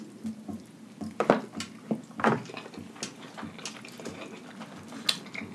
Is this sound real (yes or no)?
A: yes